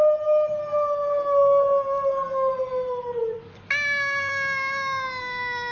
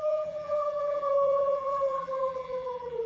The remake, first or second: second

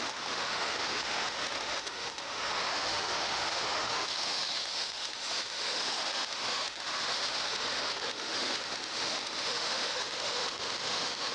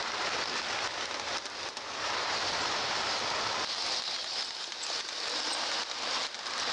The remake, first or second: first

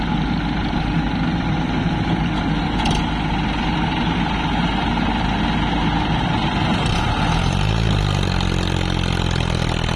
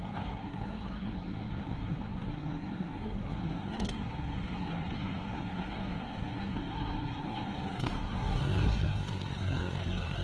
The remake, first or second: second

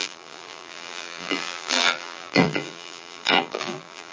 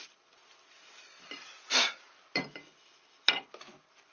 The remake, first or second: first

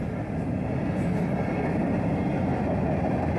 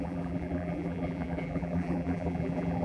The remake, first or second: second